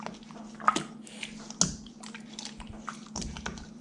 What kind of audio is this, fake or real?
real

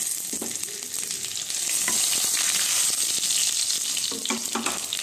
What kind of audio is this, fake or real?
real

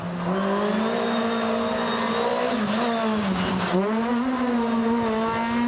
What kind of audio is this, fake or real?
real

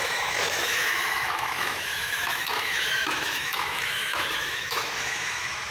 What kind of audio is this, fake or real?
fake